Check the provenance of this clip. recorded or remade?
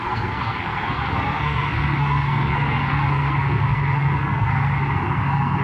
remade